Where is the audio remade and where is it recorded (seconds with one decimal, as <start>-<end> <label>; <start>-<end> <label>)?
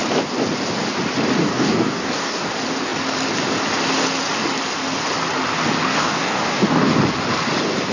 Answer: 0.0-1.4 recorded; 1.4-2.5 remade; 2.5-5.9 recorded; 5.9-6.9 remade; 6.9-7.9 recorded